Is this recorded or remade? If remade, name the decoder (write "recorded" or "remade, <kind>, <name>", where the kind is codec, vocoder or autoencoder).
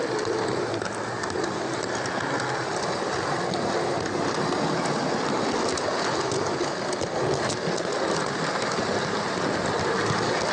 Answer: recorded